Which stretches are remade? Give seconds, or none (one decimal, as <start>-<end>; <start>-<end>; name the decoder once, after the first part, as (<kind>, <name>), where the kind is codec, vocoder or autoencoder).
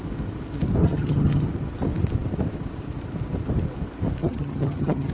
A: 0.8-1.5 (vocoder, HiFi-GAN); 4.2-5.1